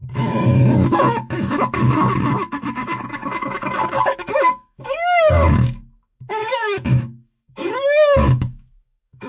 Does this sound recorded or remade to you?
remade